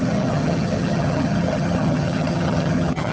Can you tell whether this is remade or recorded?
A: remade